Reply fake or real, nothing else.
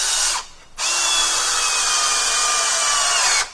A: real